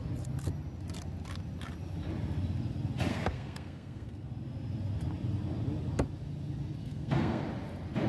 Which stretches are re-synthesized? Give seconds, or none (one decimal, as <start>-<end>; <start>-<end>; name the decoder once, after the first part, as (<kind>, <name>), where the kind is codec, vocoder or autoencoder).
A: 3.1-4.3 (codec, SNAC); 6.8-7.4

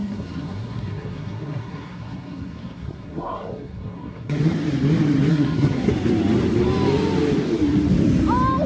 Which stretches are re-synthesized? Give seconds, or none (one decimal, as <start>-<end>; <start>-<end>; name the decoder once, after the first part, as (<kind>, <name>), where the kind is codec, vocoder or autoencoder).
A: 0.0-4.4 (codec, SNAC); 5.3-5.9

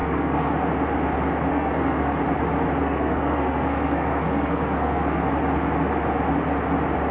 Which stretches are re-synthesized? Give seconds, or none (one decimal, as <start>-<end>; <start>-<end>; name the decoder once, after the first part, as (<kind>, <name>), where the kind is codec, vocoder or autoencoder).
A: 0.0-0.5 (codec, SNAC); 1.5-2.2; 2.8-5.2

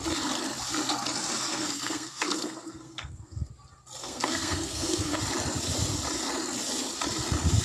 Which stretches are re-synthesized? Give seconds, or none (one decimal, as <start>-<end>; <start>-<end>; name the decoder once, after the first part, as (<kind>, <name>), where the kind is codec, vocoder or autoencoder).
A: 1.5-3.5 (codec, SNAC); 4.0-5.2

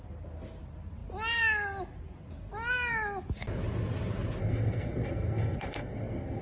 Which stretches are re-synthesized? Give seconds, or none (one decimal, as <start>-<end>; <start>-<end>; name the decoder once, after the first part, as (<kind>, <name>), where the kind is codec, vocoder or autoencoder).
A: 4.4-6.4 (codec, SNAC)

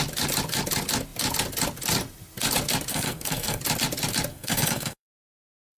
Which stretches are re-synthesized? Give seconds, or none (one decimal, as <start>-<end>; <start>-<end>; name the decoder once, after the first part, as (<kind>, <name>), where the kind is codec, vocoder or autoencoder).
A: 2.9-3.6 (codec, SNAC); 4.3-5.8